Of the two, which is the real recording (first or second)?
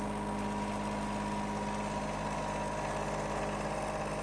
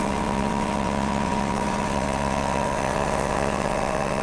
first